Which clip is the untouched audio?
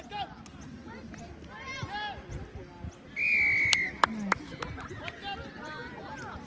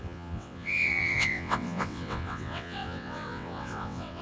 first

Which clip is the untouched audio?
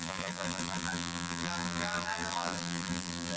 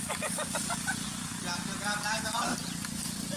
second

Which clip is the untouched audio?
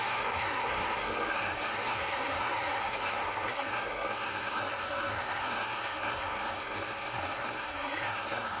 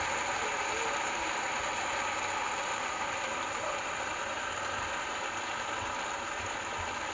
second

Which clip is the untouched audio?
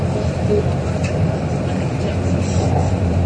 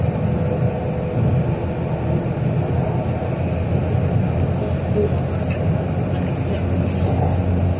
second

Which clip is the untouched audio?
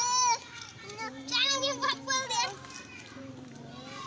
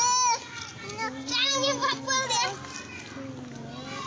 second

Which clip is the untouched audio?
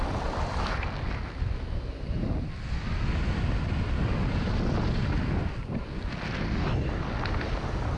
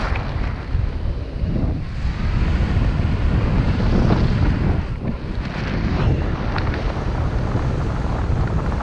first